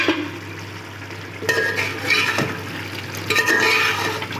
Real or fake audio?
real